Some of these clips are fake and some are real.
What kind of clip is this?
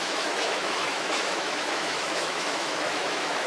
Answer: fake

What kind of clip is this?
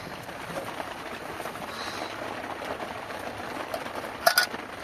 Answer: real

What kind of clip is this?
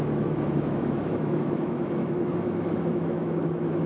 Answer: fake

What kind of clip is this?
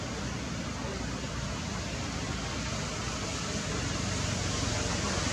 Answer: real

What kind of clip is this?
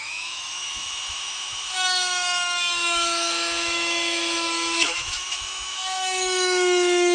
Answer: fake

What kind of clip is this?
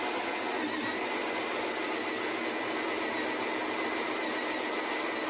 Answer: real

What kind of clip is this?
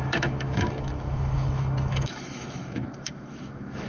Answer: fake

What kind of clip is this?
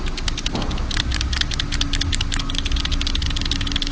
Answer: real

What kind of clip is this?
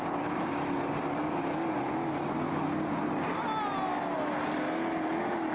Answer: real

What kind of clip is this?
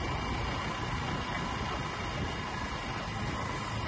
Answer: real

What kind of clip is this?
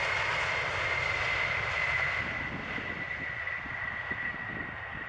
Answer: real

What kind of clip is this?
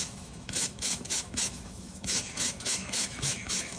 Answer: fake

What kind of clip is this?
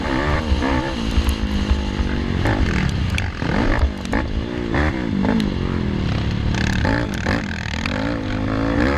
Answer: real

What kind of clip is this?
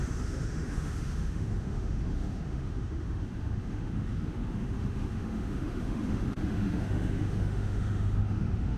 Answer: fake